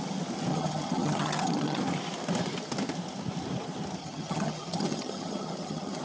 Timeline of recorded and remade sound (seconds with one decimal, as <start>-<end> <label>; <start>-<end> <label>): 0.0-0.5 recorded; 0.5-1.8 remade; 1.8-4.0 recorded; 4.0-6.0 remade